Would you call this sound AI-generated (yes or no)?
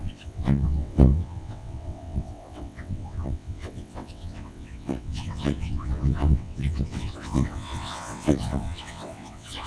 yes